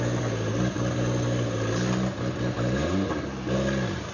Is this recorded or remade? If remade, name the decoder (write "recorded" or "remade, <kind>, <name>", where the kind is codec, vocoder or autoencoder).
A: recorded